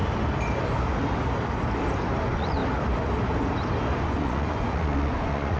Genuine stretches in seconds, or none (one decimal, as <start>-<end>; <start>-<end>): 0.0-2.2; 2.6-4.0